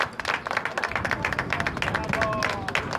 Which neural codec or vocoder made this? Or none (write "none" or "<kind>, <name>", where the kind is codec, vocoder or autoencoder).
none